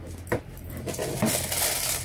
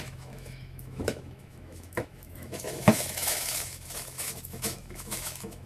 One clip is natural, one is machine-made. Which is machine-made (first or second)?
second